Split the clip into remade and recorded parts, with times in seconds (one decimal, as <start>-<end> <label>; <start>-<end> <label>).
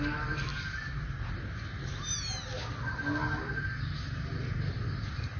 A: 0.0-5.4 recorded